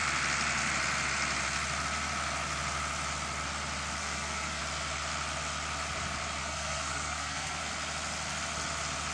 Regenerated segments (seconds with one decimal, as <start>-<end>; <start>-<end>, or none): 4.0-4.6; 6.4-7.6